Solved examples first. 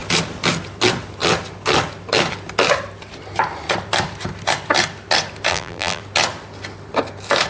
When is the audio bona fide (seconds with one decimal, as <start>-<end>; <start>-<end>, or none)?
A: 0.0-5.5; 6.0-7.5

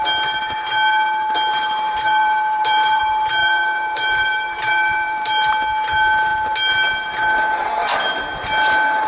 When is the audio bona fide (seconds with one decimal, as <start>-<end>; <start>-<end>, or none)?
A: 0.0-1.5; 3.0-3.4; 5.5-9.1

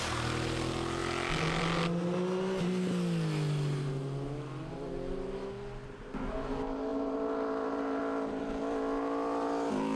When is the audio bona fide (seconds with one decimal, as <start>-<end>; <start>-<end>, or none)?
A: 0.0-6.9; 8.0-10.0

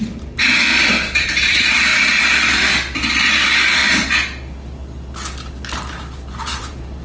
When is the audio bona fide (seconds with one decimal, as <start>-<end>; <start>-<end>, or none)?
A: 1.9-3.3; 3.8-6.3

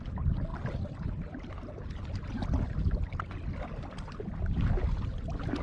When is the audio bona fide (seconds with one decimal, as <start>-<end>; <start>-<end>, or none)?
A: 0.0-5.6

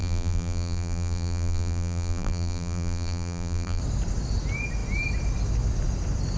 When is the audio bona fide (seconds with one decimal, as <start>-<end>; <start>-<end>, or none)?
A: 3.8-6.4

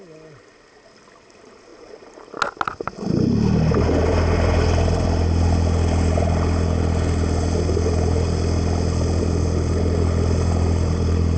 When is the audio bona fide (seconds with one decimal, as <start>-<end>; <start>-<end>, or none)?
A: 0.0-11.4